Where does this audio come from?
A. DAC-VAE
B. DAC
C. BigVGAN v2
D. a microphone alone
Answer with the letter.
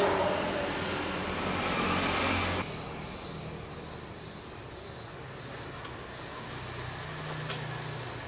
D